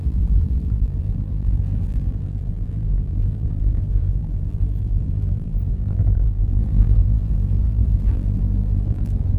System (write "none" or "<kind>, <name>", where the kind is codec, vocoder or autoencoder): vocoder, BigVGAN v2